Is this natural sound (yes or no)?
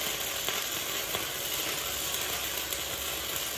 yes